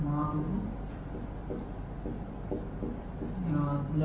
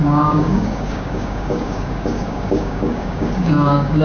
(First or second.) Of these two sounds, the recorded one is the first